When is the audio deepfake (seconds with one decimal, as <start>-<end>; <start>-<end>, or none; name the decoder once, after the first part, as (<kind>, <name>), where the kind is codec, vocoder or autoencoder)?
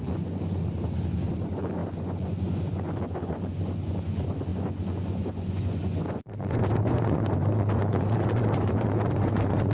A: 0.0-0.6 (vocoder, Vocos); 1.4-9.7